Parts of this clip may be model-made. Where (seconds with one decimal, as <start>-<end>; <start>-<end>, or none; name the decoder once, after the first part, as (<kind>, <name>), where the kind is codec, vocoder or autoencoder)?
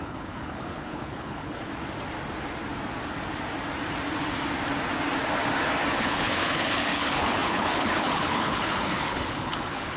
0.0-1.7 (codec, HILCodec); 6.0-10.0